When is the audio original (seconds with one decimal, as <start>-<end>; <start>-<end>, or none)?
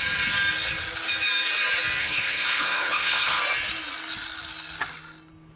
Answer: 0.0-2.0; 3.4-5.6